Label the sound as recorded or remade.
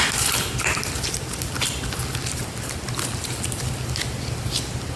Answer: recorded